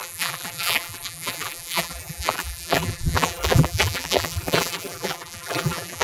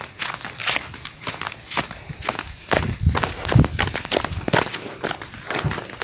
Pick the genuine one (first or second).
second